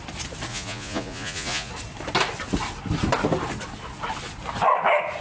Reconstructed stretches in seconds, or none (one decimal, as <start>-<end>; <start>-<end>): 0.5-1.7

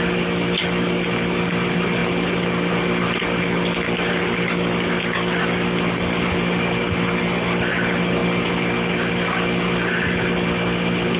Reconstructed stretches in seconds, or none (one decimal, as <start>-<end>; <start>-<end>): none

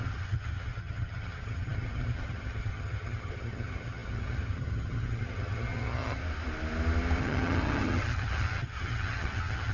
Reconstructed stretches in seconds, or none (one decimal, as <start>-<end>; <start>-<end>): 0.0-6.2; 7.2-9.7

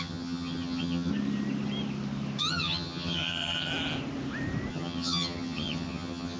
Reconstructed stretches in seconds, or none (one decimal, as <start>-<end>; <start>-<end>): 0.0-1.1; 2.4-3.7; 4.7-6.4

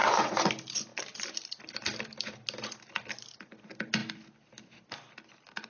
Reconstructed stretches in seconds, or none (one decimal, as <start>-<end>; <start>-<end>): 0.0-0.5